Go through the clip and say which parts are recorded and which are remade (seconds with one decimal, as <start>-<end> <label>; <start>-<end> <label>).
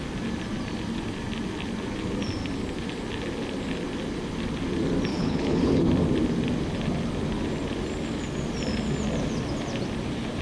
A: 0.0-5.1 recorded; 5.1-5.8 remade; 5.8-10.4 recorded